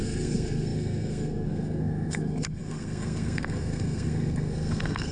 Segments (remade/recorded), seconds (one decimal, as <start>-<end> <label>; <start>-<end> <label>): 0.0-5.1 remade